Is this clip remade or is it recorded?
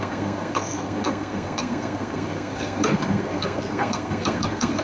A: remade